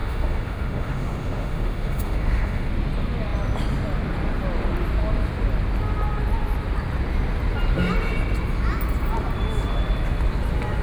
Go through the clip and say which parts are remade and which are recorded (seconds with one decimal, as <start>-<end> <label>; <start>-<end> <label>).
0.0-2.7 remade; 2.7-10.8 recorded